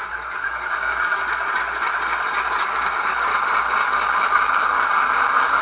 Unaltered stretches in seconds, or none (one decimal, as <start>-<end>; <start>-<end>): 0.0-0.7; 1.2-2.6; 3.3-4.3